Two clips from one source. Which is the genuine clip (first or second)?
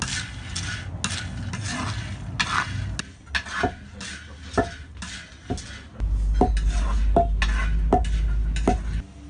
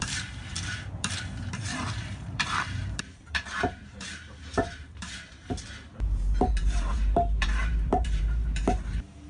first